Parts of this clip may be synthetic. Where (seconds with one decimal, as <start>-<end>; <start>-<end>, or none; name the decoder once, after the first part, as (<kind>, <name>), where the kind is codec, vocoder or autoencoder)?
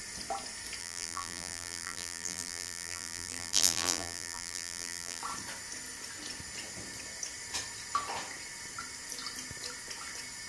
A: 0.8-5.2 (vocoder, BigVGAN v2)